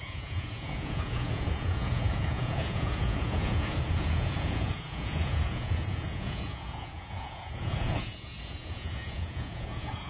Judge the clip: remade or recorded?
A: remade